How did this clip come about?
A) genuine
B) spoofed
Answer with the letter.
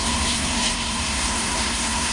B